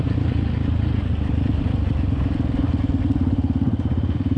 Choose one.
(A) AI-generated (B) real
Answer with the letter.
A